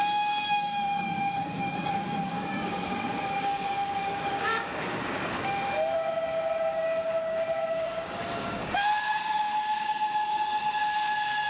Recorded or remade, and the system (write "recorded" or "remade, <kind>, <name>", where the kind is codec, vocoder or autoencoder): remade, codec, DAC